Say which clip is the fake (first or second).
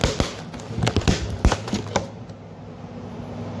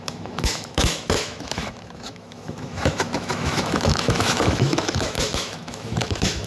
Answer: second